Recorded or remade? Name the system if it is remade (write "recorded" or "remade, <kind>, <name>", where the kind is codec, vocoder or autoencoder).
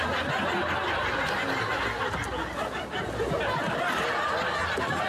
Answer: recorded